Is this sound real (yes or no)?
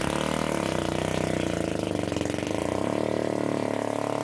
yes